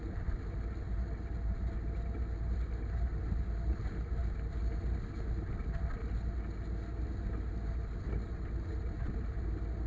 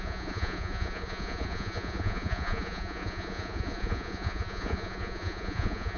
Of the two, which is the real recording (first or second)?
first